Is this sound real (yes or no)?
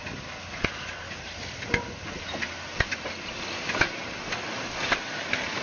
yes